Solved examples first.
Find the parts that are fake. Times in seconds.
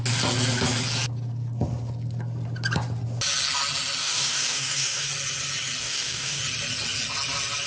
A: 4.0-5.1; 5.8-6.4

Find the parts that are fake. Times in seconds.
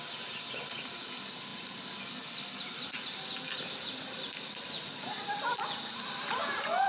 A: none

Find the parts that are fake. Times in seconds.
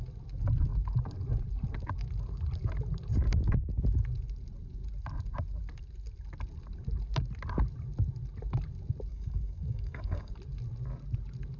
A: 9.1-10.3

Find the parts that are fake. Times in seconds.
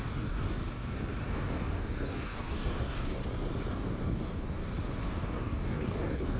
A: 0.0-0.6; 1.3-3.2; 3.7-4.6; 5.1-6.4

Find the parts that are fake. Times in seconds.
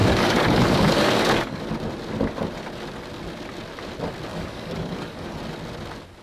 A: 0.0-1.6; 4.3-5.4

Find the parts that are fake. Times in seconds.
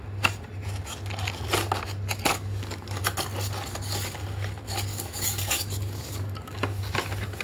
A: 2.3-3.0; 4.9-6.8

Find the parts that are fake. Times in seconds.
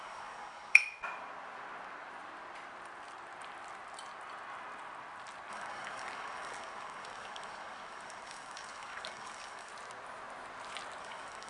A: 0.0-0.8; 5.5-9.7; 11.0-11.5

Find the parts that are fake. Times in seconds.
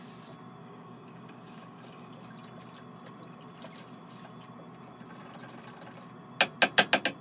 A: 0.6-2.1